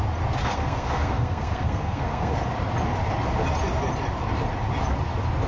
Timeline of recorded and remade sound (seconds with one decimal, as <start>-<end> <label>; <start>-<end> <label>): 0.0-0.4 recorded; 0.4-2.3 remade; 2.3-5.5 recorded